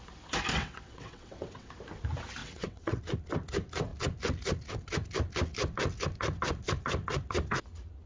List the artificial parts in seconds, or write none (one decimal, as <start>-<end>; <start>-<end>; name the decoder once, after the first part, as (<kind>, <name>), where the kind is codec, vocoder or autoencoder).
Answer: 0.5-1.7 (vocoder, WaveNeXt); 2.4-3.0